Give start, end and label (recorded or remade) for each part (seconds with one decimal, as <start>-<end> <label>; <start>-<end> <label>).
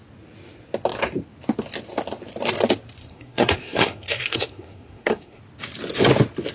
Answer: 0.0-3.0 recorded; 3.0-5.4 remade; 5.4-6.5 recorded